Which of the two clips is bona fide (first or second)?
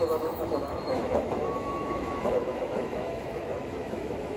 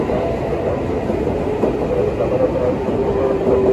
second